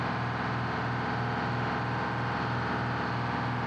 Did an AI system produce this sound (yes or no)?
no